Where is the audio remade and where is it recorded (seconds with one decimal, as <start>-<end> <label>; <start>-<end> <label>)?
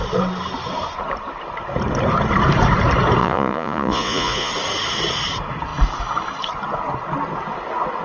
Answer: 0.0-3.2 recorded; 3.2-4.5 remade; 4.5-8.0 recorded